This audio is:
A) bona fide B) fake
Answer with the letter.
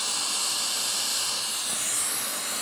A